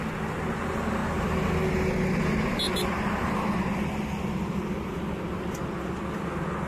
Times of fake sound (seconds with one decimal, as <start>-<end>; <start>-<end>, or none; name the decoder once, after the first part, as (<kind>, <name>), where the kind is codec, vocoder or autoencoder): none